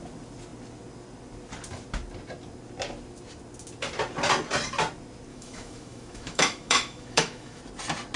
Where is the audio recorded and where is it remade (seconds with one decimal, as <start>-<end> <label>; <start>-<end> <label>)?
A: 0.0-5.3 recorded; 5.3-7.6 remade; 7.6-8.2 recorded